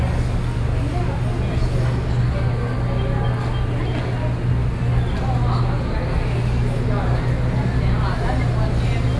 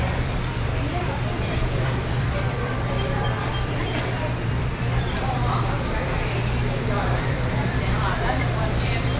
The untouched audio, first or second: first